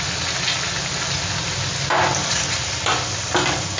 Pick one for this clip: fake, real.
real